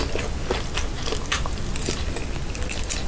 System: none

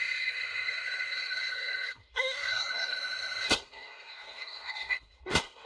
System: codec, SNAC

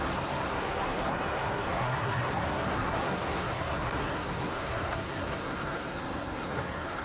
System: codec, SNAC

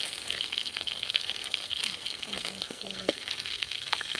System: codec, SNAC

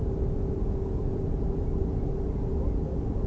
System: none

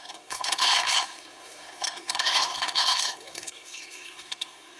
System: codec, SNAC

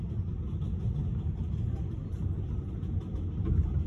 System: none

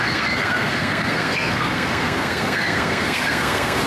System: codec, SNAC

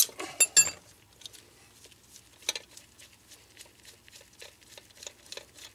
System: none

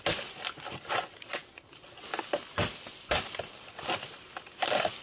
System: none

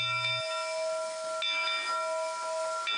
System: none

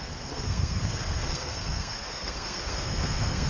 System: codec, SNAC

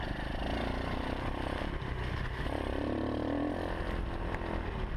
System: none